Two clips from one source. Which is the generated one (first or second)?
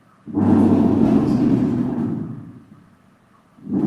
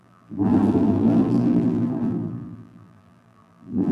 second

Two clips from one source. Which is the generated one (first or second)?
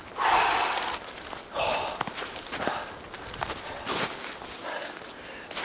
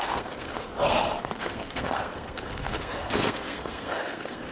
second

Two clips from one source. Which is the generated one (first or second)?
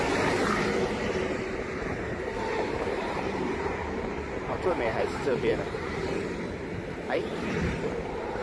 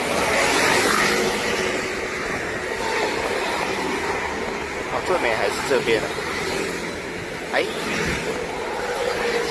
first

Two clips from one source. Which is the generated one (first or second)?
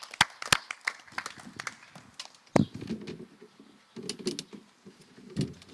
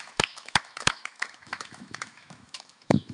second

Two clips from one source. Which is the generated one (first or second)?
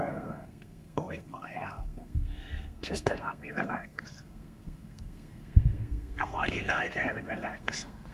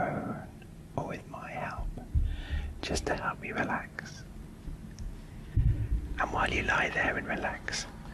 first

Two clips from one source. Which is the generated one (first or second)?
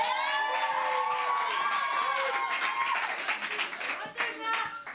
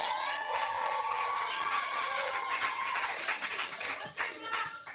second